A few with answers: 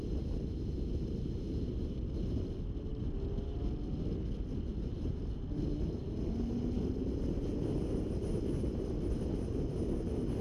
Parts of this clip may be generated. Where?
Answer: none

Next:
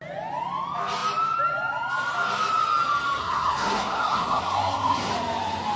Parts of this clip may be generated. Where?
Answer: 3.2-5.1 (codec, SNAC)

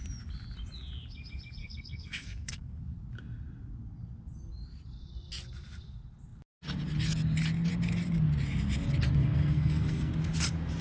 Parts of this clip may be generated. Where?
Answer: 1.6-2.8 (codec, SNAC); 9.2-10.1

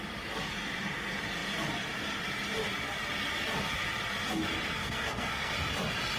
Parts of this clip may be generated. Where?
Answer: 4.8-5.5 (codec, SNAC)

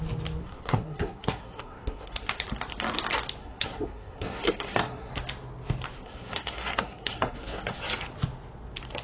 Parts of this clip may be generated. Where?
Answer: 0.4-2.4 (codec, SNAC); 3.4-5.1; 6.0-7.8

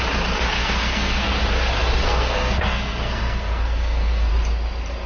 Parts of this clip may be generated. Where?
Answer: 0.6-1.3 (codec, SNAC); 2.0-4.3

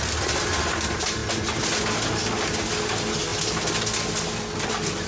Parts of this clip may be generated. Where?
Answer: none